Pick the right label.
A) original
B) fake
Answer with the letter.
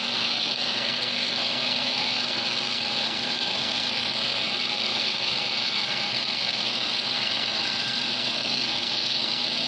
B